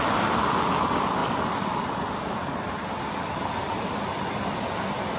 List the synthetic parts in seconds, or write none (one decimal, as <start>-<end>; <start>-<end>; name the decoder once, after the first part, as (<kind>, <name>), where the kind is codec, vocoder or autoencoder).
none